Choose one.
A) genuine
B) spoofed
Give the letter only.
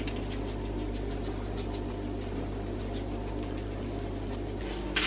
A